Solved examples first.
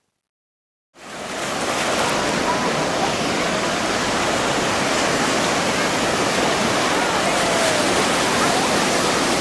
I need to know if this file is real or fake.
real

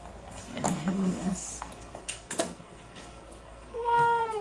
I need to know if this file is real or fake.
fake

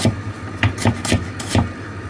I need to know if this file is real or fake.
real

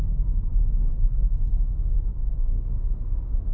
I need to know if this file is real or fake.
fake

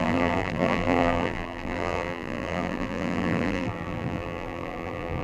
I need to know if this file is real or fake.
fake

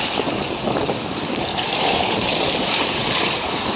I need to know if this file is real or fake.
fake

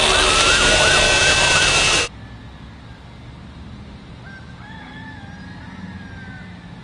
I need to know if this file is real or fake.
real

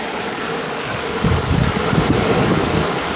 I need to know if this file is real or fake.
fake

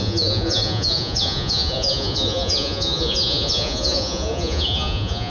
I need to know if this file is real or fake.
fake